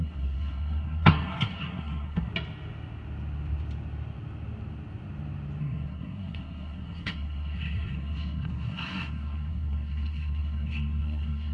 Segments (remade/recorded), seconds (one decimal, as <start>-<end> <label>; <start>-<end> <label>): 0.0-2.3 remade; 2.3-5.6 recorded; 5.6-11.5 remade